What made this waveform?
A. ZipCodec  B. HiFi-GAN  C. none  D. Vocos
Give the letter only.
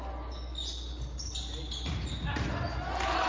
C